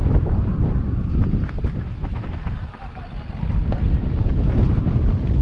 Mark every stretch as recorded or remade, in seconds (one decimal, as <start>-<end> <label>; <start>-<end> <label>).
0.0-0.9 remade; 0.9-1.9 recorded; 1.9-4.7 remade; 4.7-5.4 recorded